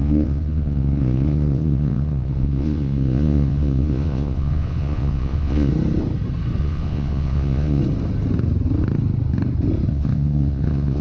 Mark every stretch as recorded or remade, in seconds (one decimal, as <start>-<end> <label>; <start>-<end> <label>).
0.0-5.7 remade; 5.7-6.6 recorded; 6.6-7.8 remade; 7.8-9.9 recorded; 9.9-11.0 remade